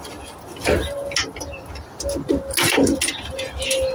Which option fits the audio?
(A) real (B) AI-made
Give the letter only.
A